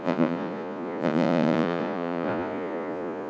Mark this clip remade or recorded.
remade